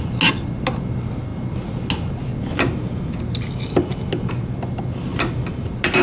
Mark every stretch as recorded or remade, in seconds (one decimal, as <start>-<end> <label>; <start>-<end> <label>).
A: 0.0-6.0 recorded